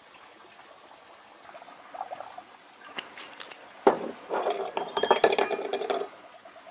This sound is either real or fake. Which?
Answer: real